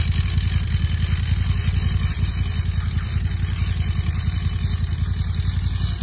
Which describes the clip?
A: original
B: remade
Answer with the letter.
A